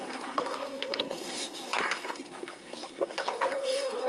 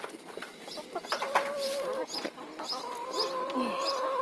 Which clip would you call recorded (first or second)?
second